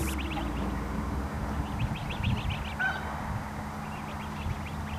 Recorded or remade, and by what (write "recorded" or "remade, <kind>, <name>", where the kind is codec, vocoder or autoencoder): recorded